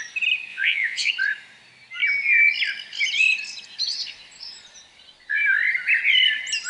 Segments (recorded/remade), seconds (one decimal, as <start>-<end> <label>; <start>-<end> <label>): 0.0-0.5 recorded; 0.5-1.1 remade; 1.1-6.7 recorded